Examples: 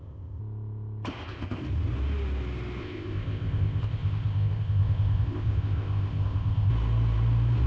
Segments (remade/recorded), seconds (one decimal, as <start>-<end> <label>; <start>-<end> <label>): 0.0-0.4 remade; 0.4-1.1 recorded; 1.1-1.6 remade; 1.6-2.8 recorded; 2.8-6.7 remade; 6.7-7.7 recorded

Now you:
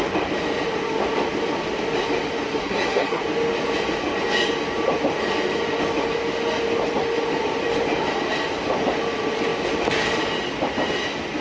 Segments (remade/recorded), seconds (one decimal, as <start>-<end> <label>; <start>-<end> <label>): 0.0-2.6 recorded; 2.6-3.2 remade; 3.2-11.4 recorded

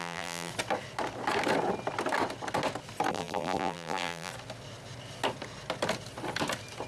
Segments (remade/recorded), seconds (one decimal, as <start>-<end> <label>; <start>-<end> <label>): 0.0-0.5 remade; 0.5-3.1 recorded; 3.1-4.3 remade; 4.3-6.9 recorded

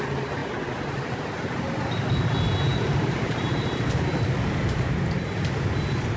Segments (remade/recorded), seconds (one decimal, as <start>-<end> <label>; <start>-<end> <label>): 0.0-0.4 recorded; 0.4-1.2 remade; 1.2-2.7 recorded; 2.7-4.0 remade; 4.0-6.2 recorded

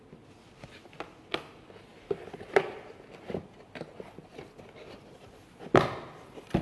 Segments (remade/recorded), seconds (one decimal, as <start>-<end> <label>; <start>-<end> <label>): 0.0-6.6 recorded